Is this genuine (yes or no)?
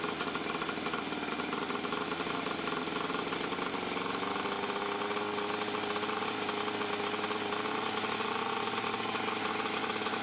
yes